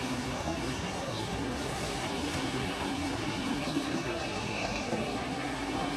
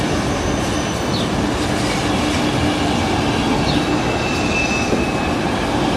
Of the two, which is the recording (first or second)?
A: second